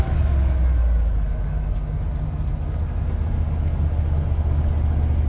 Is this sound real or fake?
real